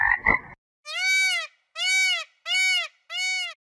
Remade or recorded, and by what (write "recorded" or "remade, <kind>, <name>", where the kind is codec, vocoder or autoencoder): recorded